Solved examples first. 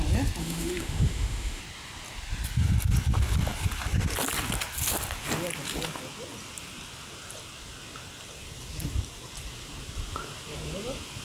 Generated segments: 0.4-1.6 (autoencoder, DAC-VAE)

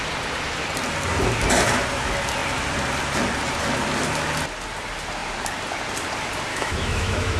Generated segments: 6.5-7.4 (autoencoder, DAC-VAE)

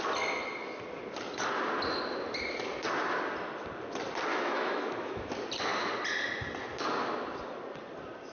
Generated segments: 4.3-5.3 (autoencoder, DAC-VAE)

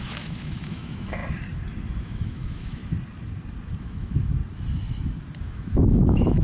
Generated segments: 0.0-1.2 (autoencoder, DAC-VAE); 2.0-2.8; 3.8-4.4; 5.4-6.4

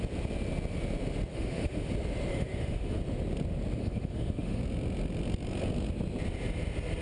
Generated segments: 1.3-1.9 (autoencoder, DAC-VAE); 2.3-3.0; 3.8-4.6

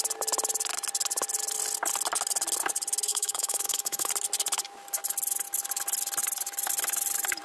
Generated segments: 3.1-4.1 (autoencoder, DAC-VAE)

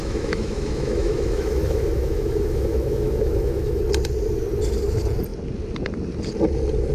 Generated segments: 0.0-3.8 (autoencoder, DAC-VAE)

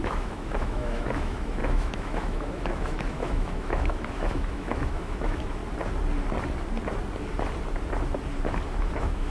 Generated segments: 0.0-5.6 (autoencoder, DAC-VAE); 8.8-9.3